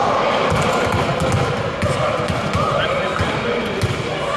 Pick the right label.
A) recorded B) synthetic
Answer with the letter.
A